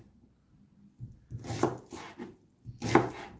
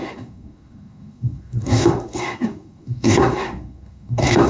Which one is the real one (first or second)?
first